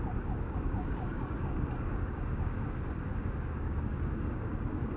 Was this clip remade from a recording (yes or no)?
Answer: yes